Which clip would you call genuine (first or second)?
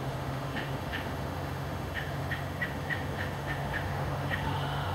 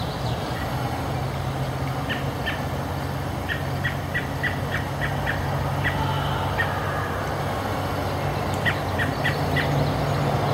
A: second